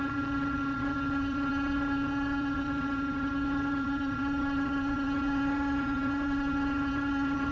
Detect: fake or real fake